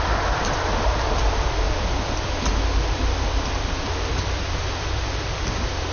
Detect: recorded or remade recorded